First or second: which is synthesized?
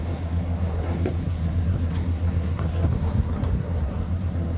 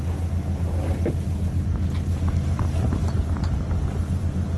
first